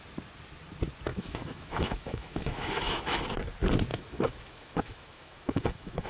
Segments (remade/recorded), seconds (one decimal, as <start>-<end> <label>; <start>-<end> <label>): 0.0-1.1 recorded; 1.1-3.2 remade; 3.2-3.9 recorded; 3.9-6.1 remade